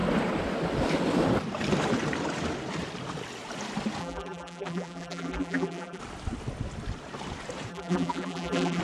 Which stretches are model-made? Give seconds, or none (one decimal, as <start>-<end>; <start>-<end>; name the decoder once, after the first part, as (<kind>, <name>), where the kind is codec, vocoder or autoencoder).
4.0-6.0 (vocoder, BigVGAN v2); 7.7-8.8